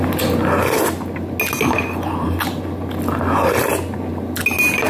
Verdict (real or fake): real